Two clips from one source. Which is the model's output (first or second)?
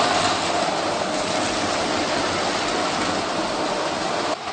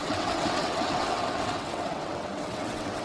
second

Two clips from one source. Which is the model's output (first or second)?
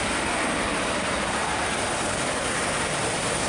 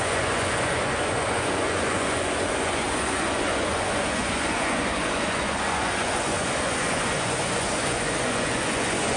second